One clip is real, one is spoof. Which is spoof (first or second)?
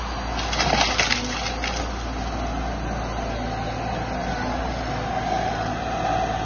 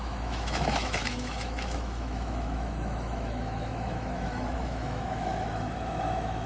second